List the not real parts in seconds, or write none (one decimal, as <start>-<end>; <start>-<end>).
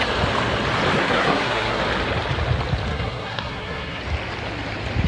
1.0-1.8; 2.9-4.0